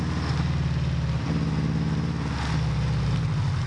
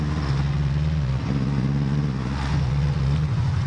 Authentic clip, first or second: first